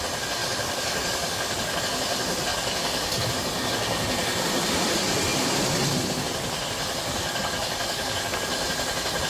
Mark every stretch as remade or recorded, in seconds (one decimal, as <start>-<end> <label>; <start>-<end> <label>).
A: 0.0-0.4 recorded; 0.4-1.8 remade; 1.8-2.5 recorded; 2.5-3.3 remade; 3.3-7.2 recorded; 7.2-8.3 remade; 8.3-9.3 recorded